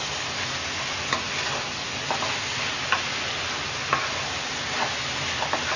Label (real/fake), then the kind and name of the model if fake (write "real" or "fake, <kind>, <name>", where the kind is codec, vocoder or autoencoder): real